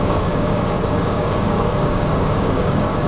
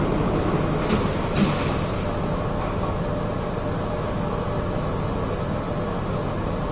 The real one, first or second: second